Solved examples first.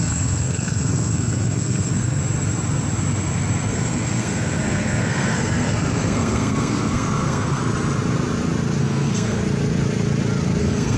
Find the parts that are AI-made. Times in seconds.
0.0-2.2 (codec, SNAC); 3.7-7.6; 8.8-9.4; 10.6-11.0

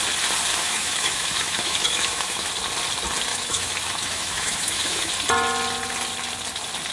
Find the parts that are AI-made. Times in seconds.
0.5-2.5 (autoencoder, DAC-VAE); 3.3-5.1

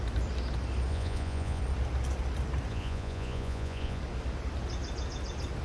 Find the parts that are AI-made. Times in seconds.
0.9-1.6 (vocoder, Vocos); 2.7-4.0

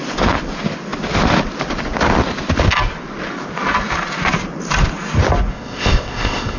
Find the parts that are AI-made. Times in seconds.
5.5-6.6 (codec, ZipCodec)